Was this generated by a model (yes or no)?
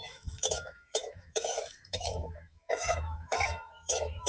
yes